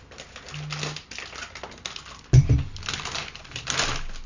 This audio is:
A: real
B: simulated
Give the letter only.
A